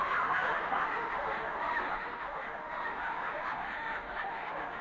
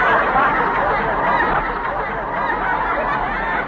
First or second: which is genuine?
second